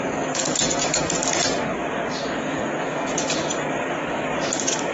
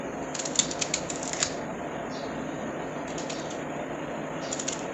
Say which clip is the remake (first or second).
first